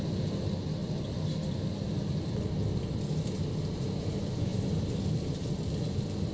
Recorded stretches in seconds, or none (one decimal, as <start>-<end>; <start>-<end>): 0.0-6.3